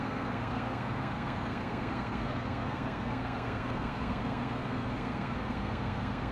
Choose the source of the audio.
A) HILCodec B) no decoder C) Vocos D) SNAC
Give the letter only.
D